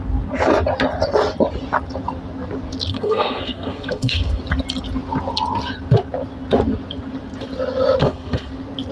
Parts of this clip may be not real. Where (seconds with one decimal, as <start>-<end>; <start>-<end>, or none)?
2.9-4.4; 8.0-8.5